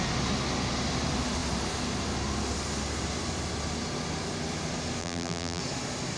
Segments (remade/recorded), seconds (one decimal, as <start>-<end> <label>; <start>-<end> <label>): 0.0-5.0 recorded; 5.0-5.6 remade; 5.6-6.2 recorded

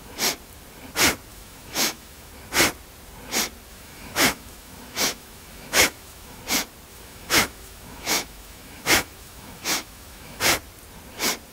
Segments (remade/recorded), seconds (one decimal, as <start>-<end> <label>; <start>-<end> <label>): 0.0-1.3 recorded; 1.3-2.3 remade; 2.3-3.7 recorded; 3.7-6.4 remade; 6.4-6.9 recorded; 6.9-10.4 remade; 10.4-11.5 recorded

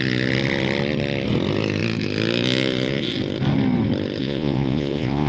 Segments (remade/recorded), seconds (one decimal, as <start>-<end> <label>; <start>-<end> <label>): 0.0-4.2 recorded; 4.2-5.3 remade

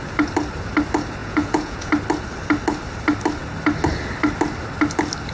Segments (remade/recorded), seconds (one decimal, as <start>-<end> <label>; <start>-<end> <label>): 0.0-1.2 recorded; 1.2-1.9 remade; 1.9-5.3 recorded